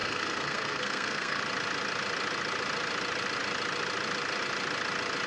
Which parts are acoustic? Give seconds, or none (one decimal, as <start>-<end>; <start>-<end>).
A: 1.4-5.3